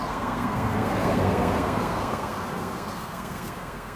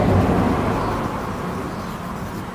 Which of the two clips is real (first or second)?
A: second